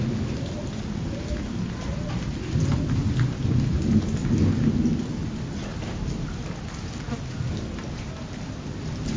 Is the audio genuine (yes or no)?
yes